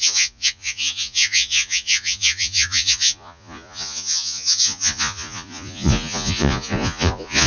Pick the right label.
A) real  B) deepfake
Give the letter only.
B